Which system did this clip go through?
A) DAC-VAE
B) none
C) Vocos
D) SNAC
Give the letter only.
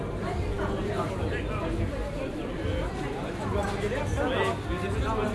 B